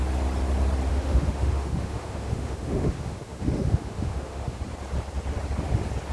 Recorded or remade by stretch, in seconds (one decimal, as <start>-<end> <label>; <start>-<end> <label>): 0.0-0.9 recorded; 0.9-4.6 remade; 4.6-6.1 recorded